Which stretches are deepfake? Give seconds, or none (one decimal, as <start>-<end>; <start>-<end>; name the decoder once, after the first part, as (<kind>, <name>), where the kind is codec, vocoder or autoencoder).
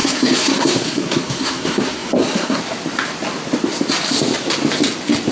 0.0-2.6 (codec, SNAC)